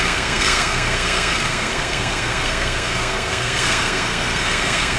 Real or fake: fake